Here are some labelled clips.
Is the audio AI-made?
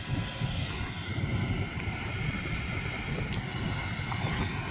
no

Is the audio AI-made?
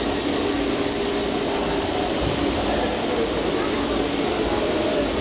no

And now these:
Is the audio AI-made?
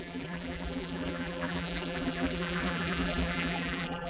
yes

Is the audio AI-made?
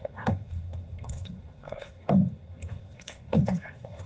yes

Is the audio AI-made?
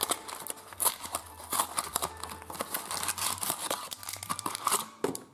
no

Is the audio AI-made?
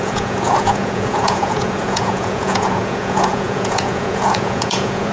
yes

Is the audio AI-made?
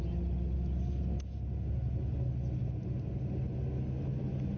no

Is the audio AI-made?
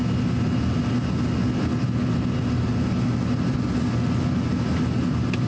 no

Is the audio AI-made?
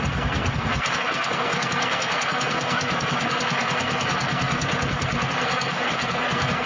yes